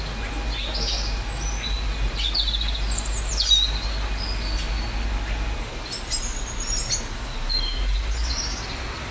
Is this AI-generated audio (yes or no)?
no